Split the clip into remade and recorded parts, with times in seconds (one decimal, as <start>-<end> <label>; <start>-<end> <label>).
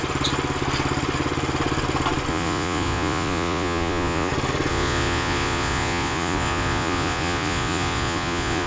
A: 0.0-2.3 recorded; 2.3-4.3 remade; 4.3-4.7 recorded; 4.7-8.7 remade